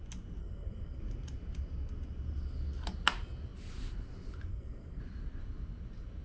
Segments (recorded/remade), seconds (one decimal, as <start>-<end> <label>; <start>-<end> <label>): 0.0-0.4 recorded; 0.4-1.0 remade; 1.0-4.5 recorded; 4.5-5.0 remade; 5.0-6.2 recorded